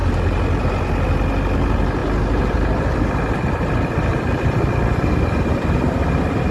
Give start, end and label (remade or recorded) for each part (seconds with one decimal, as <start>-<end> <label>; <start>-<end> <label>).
0.0-6.5 recorded